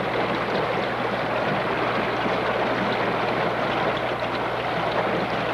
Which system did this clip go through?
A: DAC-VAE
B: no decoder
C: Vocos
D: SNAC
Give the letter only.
B